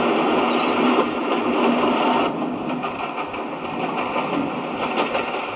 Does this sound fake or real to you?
real